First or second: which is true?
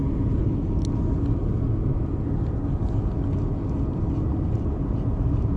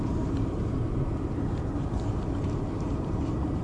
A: first